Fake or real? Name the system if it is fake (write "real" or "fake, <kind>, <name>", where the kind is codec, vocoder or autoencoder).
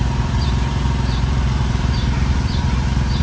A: fake, vocoder, BigVGAN v2